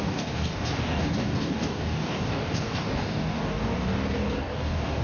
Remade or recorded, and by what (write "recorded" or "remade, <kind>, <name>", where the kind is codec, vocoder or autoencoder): remade, codec, DAC